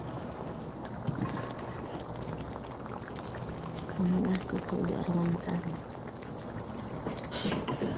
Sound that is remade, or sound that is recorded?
recorded